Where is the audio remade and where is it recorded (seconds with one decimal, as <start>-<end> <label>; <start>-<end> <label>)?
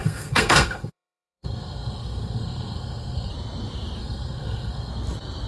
0.0-3.3 remade; 3.3-4.0 recorded; 4.0-4.9 remade; 4.9-5.5 recorded